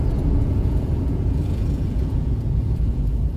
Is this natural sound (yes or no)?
no